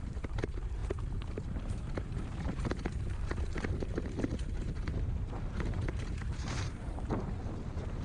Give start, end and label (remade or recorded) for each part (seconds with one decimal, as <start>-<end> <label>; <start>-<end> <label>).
0.0-8.0 remade